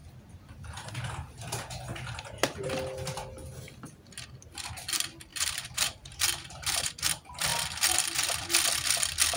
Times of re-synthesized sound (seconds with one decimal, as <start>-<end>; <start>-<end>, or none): 5.3-6.9